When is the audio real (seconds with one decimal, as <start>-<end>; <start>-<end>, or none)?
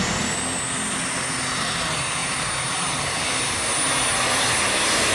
0.0-5.1